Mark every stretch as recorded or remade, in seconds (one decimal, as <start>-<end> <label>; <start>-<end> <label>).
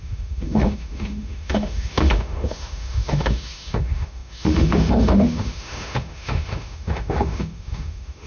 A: 0.0-8.3 remade